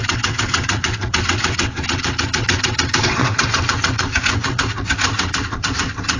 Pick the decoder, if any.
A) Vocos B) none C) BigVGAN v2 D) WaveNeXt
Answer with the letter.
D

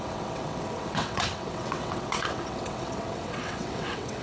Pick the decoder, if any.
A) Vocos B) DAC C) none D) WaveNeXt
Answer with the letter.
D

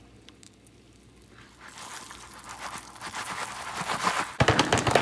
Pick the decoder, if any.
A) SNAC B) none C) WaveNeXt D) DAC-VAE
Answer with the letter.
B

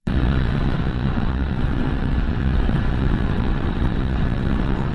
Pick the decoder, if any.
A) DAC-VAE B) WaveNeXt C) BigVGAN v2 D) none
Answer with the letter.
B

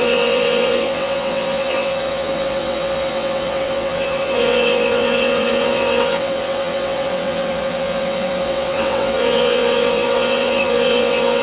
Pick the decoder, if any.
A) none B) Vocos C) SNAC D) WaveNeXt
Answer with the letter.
D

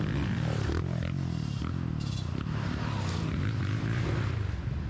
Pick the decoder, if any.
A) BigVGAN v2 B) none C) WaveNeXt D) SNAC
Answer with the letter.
B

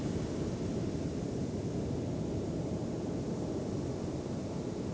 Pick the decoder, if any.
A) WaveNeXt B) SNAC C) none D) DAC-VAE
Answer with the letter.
C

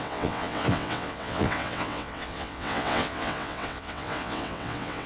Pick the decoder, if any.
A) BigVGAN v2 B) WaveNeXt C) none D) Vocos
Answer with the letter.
B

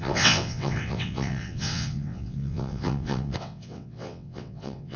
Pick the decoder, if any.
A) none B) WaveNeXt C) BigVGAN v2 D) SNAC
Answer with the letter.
B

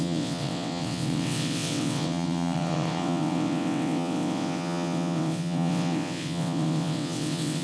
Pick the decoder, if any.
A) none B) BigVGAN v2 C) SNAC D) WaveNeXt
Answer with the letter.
D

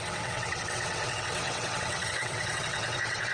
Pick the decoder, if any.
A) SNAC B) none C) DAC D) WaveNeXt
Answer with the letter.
D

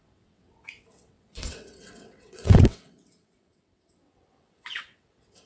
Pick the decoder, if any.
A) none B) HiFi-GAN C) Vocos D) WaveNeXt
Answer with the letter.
D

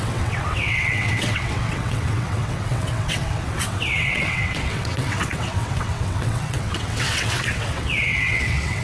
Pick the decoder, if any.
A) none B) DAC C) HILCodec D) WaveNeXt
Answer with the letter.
D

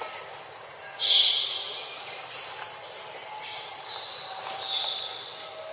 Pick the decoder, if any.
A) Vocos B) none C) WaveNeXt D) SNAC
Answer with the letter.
B